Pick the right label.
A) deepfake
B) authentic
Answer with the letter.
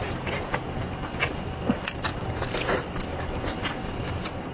B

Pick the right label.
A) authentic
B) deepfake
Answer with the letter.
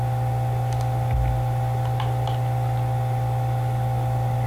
A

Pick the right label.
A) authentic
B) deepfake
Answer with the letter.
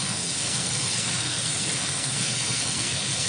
B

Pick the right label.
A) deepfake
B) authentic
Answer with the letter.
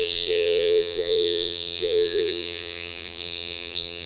A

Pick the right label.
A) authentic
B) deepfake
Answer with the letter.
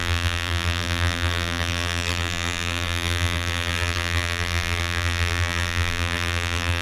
B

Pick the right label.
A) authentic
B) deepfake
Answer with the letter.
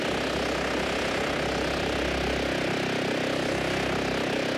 A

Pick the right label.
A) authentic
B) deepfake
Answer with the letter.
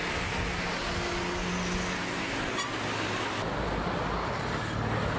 A